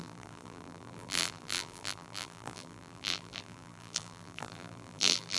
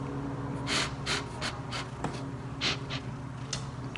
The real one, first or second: second